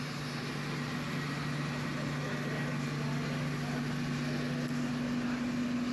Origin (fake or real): real